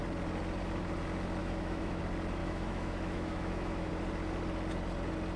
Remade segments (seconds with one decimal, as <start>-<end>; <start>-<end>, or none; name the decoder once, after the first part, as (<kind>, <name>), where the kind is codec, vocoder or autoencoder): 1.4-2.0 (autoencoder, DAC-VAE); 2.4-3.9